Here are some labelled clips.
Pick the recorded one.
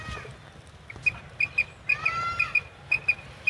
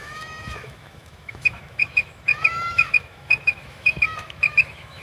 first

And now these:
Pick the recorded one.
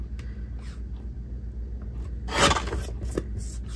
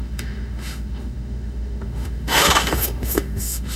first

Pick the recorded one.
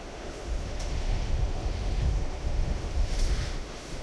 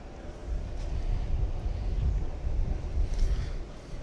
second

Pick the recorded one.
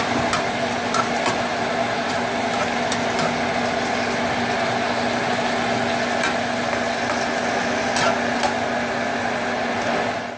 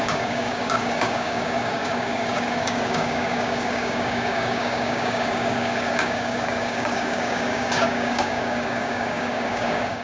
first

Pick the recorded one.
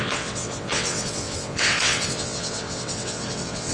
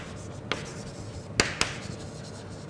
second